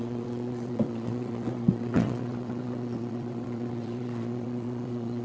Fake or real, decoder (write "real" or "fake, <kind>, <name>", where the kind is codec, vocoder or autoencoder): fake, vocoder, WaveNeXt